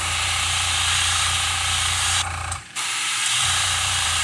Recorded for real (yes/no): no